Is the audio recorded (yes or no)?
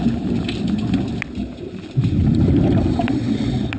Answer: yes